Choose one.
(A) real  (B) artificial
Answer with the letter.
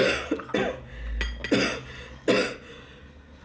A